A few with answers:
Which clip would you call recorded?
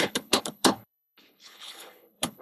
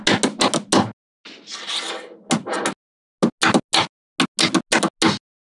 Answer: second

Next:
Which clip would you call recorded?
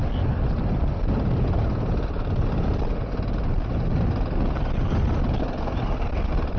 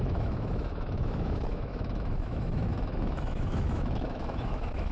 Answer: first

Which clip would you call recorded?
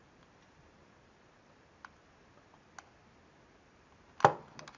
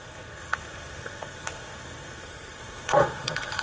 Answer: first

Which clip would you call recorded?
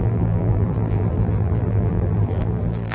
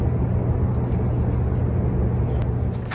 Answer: second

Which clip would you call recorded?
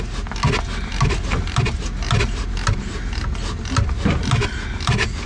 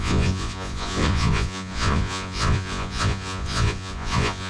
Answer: first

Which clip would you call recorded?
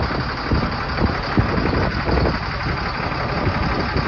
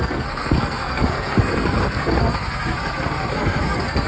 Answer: first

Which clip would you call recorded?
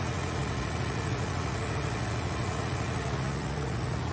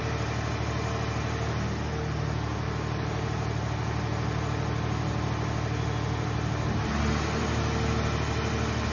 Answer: second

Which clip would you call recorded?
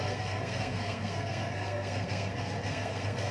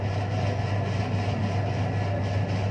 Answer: second